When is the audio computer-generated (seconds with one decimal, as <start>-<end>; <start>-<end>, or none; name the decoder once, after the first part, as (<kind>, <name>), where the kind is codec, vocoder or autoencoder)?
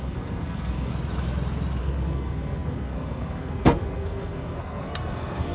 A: 0.0-0.9 (codec, SNAC); 1.8-5.5